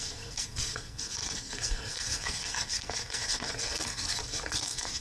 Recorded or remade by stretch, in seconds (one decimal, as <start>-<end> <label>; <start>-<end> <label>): 0.0-5.0 remade